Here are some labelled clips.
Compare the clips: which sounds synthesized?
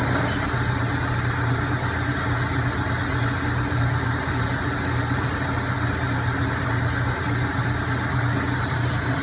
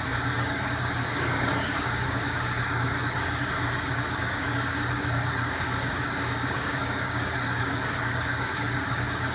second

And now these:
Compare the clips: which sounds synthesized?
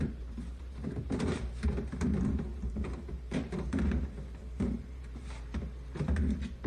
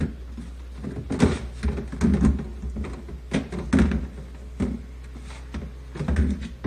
first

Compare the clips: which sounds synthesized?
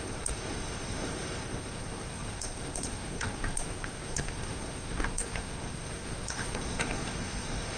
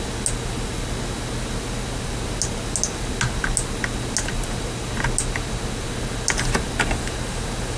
first